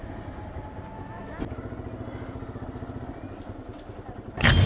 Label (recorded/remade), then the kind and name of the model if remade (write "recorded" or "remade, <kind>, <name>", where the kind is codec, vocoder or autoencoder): recorded